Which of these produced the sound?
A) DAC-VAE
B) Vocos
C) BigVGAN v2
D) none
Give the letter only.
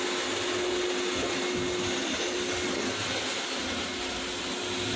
D